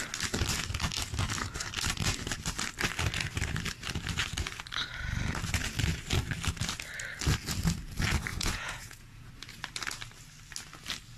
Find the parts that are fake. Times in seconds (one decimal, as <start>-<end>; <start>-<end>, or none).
8.3-9.3